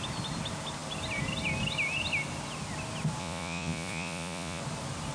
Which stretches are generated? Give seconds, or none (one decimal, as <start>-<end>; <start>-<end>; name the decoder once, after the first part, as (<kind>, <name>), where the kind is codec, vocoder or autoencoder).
3.2-4.6 (vocoder, Vocos)